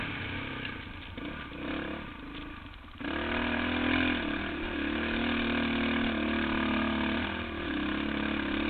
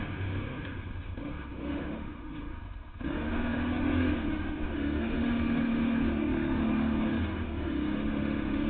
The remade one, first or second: second